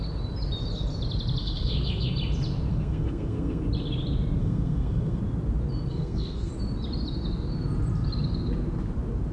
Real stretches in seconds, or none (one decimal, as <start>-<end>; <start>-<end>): 0.0-1.4; 2.1-2.7; 3.6-4.4; 5.2-5.9; 6.5-9.3

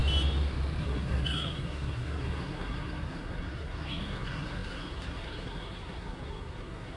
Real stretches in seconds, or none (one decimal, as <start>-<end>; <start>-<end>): 0.0-0.8

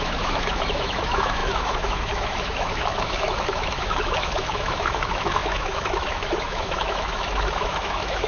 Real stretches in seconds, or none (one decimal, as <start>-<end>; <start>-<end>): none

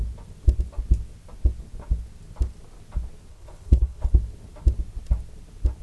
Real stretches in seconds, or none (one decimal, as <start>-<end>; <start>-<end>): 0.0-3.3; 4.1-5.8

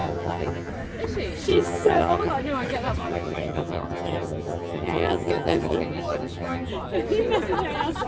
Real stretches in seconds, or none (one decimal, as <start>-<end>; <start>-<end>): 0.7-1.5; 2.3-3.0; 6.7-8.1

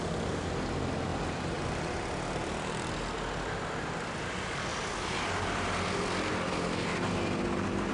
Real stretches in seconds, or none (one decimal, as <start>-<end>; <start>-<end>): 0.0-7.9

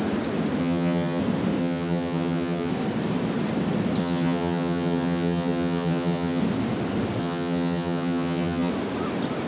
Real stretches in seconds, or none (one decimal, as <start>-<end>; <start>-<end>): 0.0-0.6; 1.2-1.6; 2.7-4.0; 6.4-7.2; 8.7-9.5

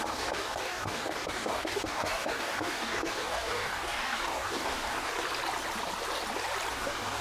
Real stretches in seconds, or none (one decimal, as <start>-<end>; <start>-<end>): 5.1-6.7